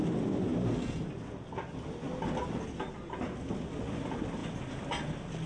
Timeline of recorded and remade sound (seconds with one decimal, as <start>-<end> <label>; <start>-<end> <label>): 0.0-5.5 recorded